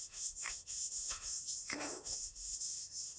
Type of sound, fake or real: fake